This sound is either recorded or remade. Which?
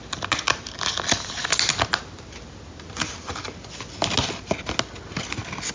recorded